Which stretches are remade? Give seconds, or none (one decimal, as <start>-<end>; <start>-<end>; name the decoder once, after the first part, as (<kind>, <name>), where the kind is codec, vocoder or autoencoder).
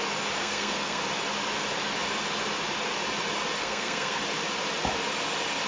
0.4-1.0 (codec, SNAC); 3.6-4.2